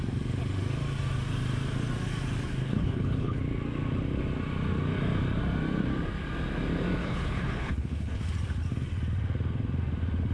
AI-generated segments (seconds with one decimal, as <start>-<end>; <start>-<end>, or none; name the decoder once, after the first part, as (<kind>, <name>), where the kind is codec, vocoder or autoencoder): 2.6-3.4 (codec, HILCodec); 7.0-8.2